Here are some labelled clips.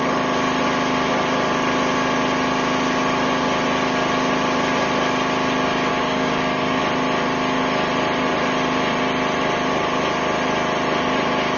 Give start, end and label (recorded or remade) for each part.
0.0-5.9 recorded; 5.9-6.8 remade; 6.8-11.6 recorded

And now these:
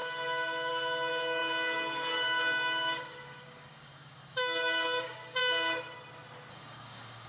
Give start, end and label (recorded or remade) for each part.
0.0-5.4 remade; 5.4-6.5 recorded; 6.5-7.3 remade

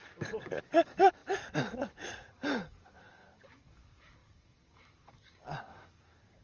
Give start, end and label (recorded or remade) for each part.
0.0-6.4 remade

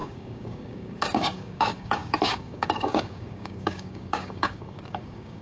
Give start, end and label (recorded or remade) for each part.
0.0-5.4 remade

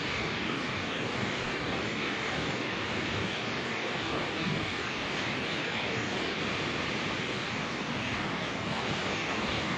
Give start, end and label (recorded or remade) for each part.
0.0-6.4 remade; 6.4-7.2 recorded; 7.2-9.8 remade

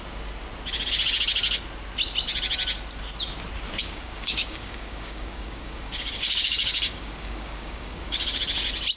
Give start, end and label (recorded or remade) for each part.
0.0-3.8 recorded; 3.8-8.4 remade; 8.4-9.0 recorded

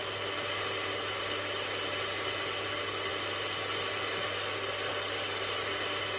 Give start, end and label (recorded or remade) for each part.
0.0-6.2 recorded

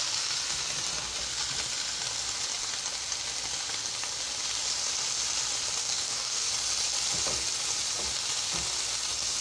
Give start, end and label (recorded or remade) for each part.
0.0-5.8 recorded; 5.8-6.5 remade; 6.5-9.4 recorded